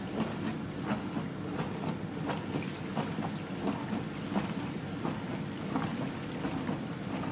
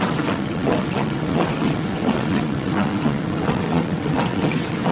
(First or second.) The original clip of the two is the first